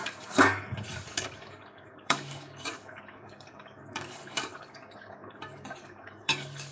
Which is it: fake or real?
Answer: fake